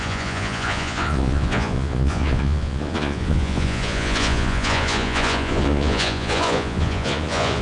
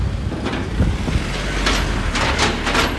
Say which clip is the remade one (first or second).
first